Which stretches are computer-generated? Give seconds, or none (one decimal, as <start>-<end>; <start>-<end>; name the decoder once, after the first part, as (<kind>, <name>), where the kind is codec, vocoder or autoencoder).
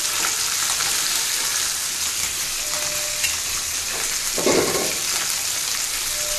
none